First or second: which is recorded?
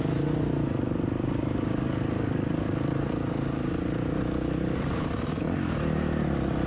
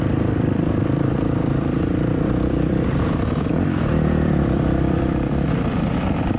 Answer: first